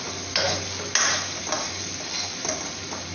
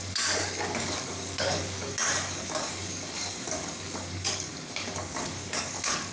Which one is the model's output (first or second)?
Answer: second